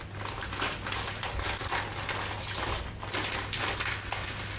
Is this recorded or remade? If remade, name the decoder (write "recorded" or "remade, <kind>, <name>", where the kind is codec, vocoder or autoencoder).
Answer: recorded